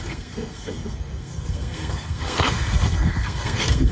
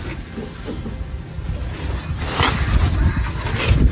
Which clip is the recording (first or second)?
second